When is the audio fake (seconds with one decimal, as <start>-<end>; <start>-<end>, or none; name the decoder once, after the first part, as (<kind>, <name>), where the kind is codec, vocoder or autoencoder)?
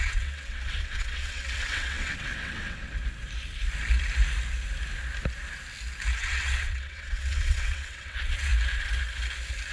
0.0-2.9 (vocoder, WaveNeXt); 6.2-8.5